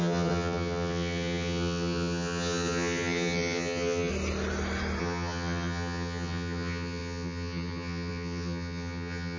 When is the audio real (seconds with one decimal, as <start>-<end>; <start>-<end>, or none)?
4.1-5.0